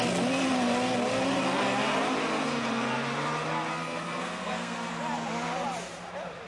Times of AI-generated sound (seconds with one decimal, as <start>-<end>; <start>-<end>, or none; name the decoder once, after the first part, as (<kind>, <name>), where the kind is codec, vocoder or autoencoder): 3.7-4.9 (codec, SNAC)